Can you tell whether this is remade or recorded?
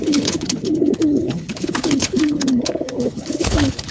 remade